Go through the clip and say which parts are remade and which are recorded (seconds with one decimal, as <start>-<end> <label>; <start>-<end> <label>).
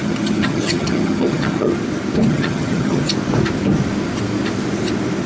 0.0-1.7 remade; 1.7-2.3 recorded; 2.3-3.0 remade; 3.0-5.3 recorded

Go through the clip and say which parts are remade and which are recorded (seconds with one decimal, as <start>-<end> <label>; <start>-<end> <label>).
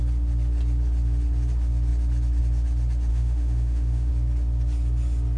0.0-3.1 recorded; 3.1-4.1 remade; 4.1-5.4 recorded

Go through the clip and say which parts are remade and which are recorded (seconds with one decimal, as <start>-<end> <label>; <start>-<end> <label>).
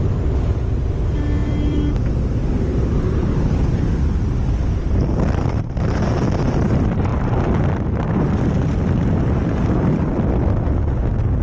0.0-1.4 recorded; 1.4-4.8 remade; 4.8-7.1 recorded; 7.1-10.7 remade; 10.7-11.4 recorded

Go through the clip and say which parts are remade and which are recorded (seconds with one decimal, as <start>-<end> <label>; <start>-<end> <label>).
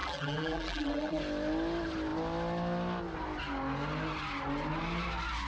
0.0-1.2 remade; 1.2-5.5 recorded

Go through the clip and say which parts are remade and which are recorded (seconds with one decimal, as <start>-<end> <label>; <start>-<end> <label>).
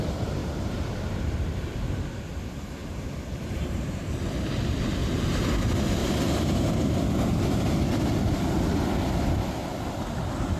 0.0-0.4 recorded; 0.4-1.2 remade; 1.2-2.8 recorded; 2.8-4.2 remade; 4.2-5.0 recorded; 5.0-5.5 remade; 5.5-6.0 recorded; 6.0-6.9 remade; 6.9-10.6 recorded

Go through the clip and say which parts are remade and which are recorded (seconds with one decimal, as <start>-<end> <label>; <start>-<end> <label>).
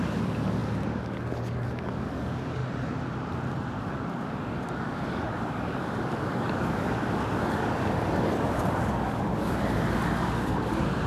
0.0-2.6 remade; 2.6-3.7 recorded; 3.7-11.1 remade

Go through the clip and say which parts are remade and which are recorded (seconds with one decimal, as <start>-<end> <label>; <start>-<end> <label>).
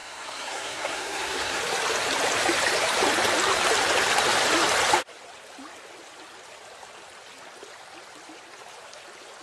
0.0-1.6 remade; 1.6-9.4 recorded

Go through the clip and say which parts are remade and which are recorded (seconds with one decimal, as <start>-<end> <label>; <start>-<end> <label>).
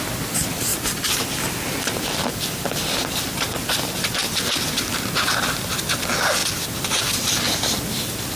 0.0-0.7 recorded; 0.7-1.2 remade; 1.2-8.4 recorded